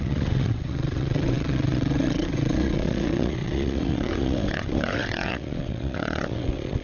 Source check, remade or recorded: remade